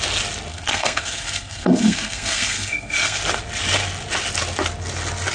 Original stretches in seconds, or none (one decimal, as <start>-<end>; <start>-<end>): 0.0-0.5; 3.2-5.3